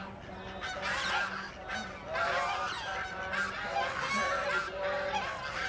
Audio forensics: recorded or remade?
recorded